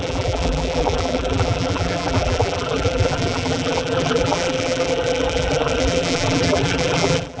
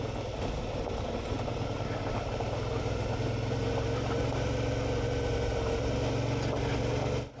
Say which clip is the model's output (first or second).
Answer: first